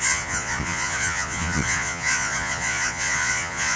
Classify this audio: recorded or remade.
remade